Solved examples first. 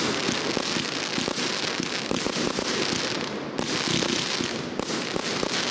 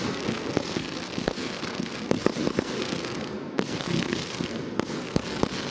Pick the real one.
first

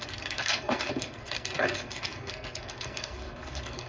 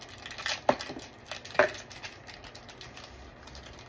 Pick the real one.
second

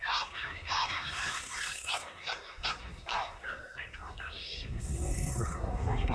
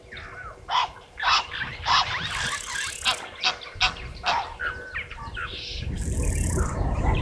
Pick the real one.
second